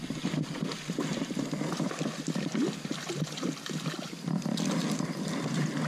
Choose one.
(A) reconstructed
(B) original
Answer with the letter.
B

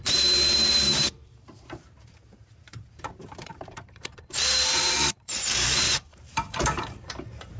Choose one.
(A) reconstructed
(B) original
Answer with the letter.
A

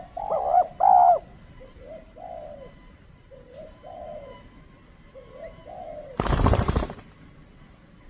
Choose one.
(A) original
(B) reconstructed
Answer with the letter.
A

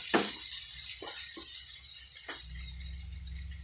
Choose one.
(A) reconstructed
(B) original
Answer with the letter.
B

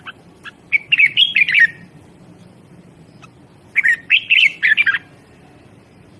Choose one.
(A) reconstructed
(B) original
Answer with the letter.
A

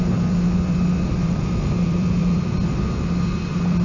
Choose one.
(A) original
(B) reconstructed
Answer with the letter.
B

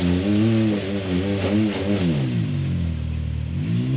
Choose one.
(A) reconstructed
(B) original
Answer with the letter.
B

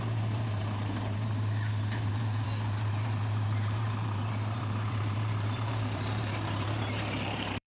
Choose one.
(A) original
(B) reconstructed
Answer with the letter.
B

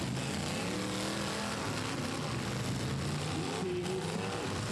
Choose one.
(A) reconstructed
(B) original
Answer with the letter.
B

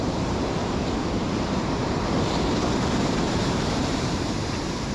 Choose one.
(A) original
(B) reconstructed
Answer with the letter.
B